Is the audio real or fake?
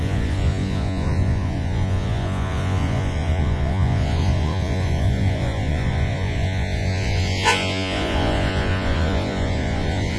fake